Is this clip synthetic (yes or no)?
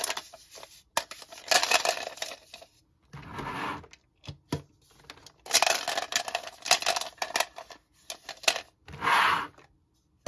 no